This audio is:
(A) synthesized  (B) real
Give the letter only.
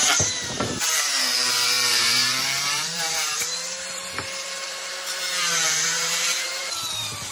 A